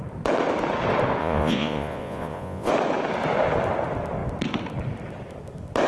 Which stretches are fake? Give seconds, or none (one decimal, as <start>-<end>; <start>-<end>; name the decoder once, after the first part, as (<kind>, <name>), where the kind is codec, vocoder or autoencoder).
1.2-2.7 (vocoder, Vocos)